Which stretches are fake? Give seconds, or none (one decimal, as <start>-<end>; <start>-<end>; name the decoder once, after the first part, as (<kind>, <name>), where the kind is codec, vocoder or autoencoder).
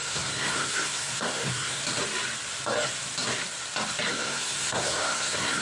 0.0-1.8 (codec, SNAC); 4.1-5.6